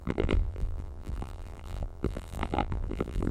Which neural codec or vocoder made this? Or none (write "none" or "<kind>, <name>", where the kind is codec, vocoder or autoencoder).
vocoder, BigVGAN v2